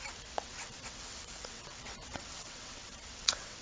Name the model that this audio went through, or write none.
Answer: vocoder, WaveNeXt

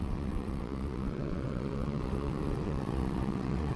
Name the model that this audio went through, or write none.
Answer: vocoder, WaveNeXt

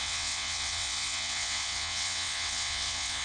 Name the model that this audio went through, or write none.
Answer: vocoder, WaveNeXt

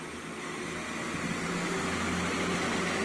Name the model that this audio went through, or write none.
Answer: none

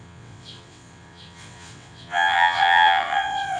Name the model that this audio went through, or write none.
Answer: vocoder, WaveNeXt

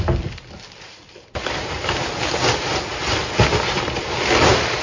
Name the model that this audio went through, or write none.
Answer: none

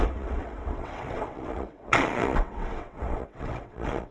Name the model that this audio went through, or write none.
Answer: vocoder, WaveNeXt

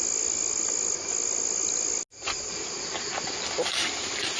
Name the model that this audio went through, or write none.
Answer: none